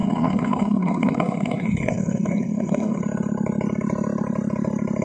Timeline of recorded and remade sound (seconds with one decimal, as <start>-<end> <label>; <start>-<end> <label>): 0.0-3.0 remade; 3.0-5.0 recorded